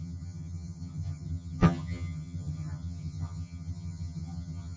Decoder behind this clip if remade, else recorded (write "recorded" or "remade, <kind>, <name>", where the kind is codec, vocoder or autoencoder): remade, vocoder, HiFi-GAN